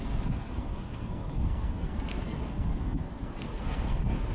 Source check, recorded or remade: remade